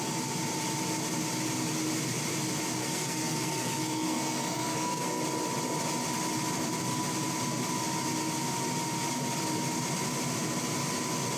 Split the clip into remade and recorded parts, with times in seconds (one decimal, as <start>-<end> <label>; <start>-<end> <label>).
0.0-2.8 recorded; 2.8-5.2 remade; 5.2-11.4 recorded